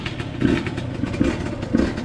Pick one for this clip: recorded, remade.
recorded